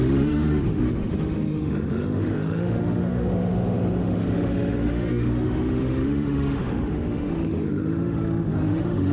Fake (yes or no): yes